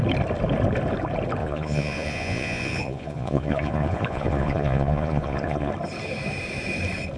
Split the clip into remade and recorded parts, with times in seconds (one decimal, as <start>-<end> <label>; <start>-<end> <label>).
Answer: 0.0-1.4 recorded; 1.4-5.7 remade; 5.7-7.2 recorded